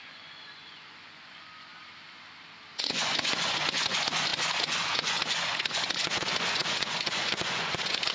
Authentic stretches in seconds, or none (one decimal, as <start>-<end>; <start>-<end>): 1.7-2.9